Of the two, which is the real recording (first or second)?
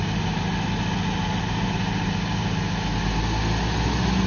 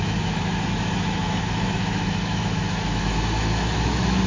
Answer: first